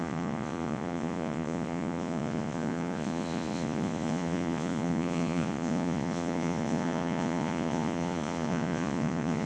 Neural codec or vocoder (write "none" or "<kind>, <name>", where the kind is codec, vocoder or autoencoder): vocoder, Vocos